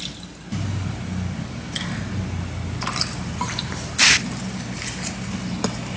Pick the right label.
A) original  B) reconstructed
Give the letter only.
A